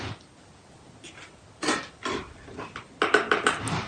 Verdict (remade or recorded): recorded